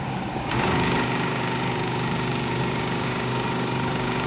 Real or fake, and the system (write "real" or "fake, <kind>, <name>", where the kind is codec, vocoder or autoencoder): fake, codec, DAC